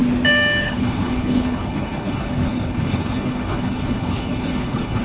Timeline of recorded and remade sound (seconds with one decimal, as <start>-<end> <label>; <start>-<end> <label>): 0.0-0.6 recorded; 0.6-5.0 remade